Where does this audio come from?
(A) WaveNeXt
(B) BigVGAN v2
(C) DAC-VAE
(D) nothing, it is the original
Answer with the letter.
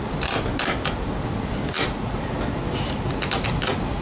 D